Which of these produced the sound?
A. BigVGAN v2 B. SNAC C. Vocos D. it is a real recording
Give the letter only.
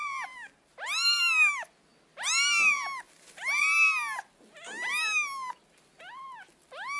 D